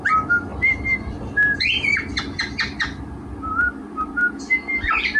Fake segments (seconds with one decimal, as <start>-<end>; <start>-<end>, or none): none